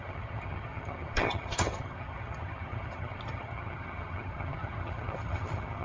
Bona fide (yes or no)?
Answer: no